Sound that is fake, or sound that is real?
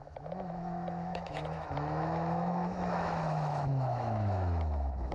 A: fake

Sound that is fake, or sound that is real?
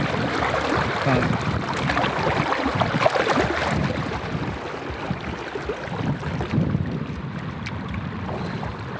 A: real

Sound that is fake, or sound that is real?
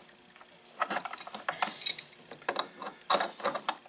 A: real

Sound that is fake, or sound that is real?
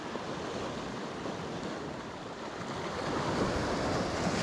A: real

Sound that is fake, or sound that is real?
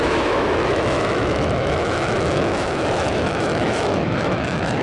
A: fake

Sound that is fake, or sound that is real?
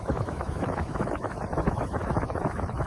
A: fake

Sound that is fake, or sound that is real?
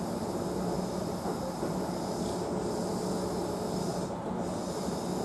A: real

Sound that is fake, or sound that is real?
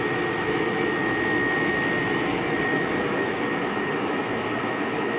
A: fake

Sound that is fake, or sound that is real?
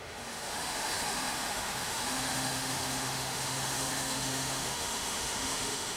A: fake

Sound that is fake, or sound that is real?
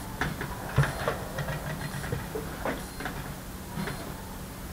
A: real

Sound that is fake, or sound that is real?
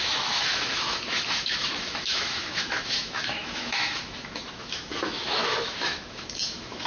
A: fake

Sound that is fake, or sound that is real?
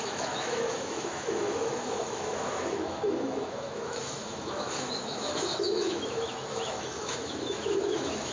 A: fake